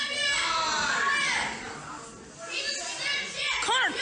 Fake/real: real